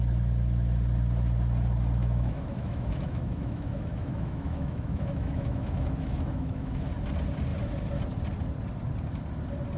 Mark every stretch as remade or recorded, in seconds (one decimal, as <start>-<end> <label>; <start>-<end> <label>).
0.0-2.0 recorded; 2.0-6.9 remade; 6.9-9.8 recorded